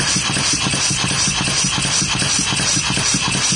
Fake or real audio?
real